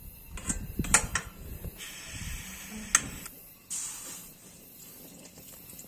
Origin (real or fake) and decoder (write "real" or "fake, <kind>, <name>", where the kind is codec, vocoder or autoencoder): real